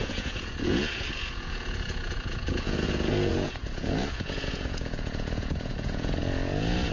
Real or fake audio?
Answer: fake